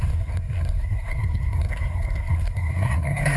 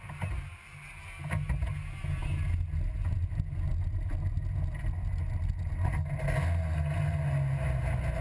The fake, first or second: first